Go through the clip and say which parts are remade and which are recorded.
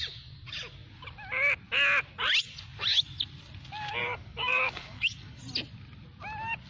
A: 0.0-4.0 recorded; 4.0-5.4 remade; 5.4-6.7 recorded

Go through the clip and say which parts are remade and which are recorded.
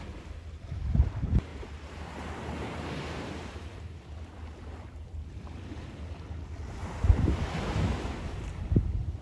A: 0.0-1.5 recorded; 1.5-4.2 remade; 4.2-6.8 recorded; 6.8-7.4 remade; 7.4-9.2 recorded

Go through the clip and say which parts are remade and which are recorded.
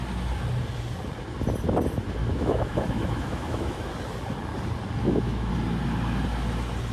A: 0.0-2.2 recorded; 2.2-3.9 remade; 3.9-5.0 recorded; 5.0-5.5 remade; 5.5-6.9 recorded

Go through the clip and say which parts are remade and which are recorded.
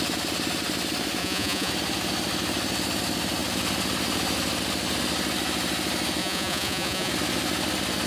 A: 0.0-1.2 recorded; 1.2-1.7 remade; 1.7-6.2 recorded; 6.2-7.1 remade; 7.1-8.1 recorded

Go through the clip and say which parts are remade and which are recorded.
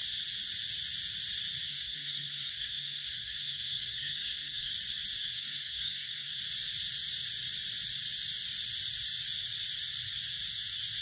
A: 0.0-1.7 recorded; 1.7-4.7 remade; 4.7-5.2 recorded; 5.2-6.4 remade; 6.4-11.0 recorded